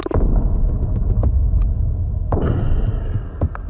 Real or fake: real